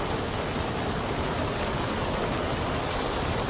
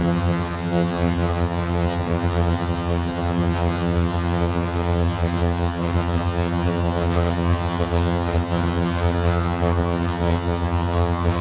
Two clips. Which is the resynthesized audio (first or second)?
second